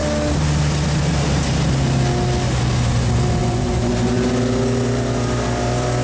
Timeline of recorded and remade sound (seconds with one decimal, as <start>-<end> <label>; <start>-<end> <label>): 0.0-3.4 recorded; 3.4-4.2 remade; 4.2-6.0 recorded